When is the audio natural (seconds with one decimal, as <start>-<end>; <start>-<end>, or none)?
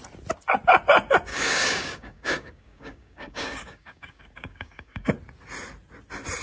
0.0-1.3; 5.1-6.4